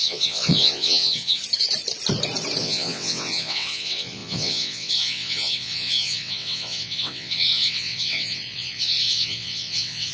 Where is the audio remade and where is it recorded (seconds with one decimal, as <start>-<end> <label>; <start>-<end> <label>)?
0.0-1.4 remade; 1.4-2.6 recorded; 2.6-10.1 remade